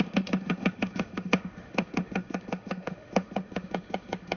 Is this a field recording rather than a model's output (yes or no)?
no